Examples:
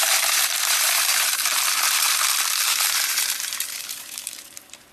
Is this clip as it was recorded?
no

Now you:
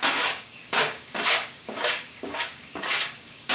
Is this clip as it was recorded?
no